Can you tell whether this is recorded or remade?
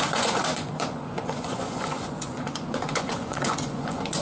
remade